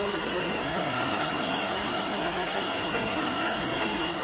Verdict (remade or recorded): remade